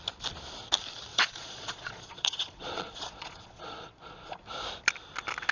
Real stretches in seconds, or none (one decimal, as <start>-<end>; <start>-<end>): 0.0-1.1; 4.4-5.5